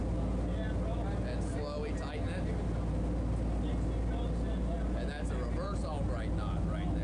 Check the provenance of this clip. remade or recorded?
recorded